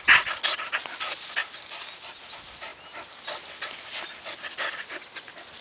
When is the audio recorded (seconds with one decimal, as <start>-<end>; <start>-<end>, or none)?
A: 0.0-5.6